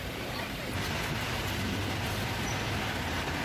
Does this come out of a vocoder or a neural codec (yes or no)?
yes